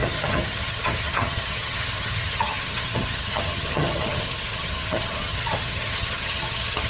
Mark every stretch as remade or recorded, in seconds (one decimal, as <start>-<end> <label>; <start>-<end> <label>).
0.0-6.9 remade

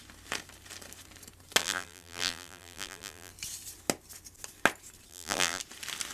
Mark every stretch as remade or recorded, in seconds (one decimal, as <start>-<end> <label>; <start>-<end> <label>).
0.0-1.6 recorded; 1.6-3.3 remade; 3.3-5.1 recorded; 5.1-5.6 remade; 5.6-6.1 recorded

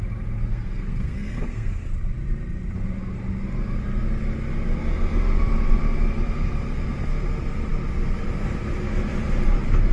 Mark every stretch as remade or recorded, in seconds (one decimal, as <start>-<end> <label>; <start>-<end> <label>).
0.0-0.5 recorded; 0.5-1.9 remade; 1.9-9.9 recorded

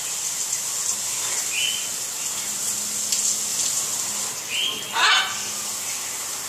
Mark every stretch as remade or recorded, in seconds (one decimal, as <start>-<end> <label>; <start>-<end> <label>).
0.0-6.5 recorded